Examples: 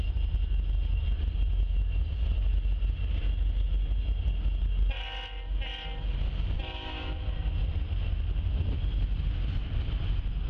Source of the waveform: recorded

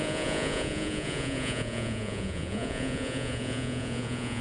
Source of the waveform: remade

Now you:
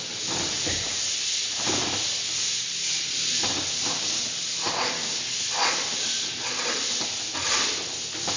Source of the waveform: recorded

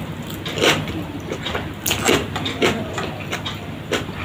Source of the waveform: recorded